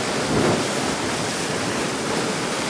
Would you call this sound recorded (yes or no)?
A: yes